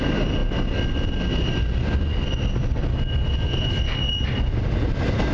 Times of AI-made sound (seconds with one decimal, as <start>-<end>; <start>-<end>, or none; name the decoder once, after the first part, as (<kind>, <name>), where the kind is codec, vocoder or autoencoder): none